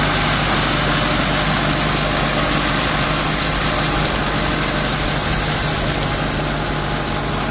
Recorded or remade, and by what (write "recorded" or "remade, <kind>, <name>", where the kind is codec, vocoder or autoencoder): recorded